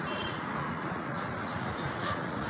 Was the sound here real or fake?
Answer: fake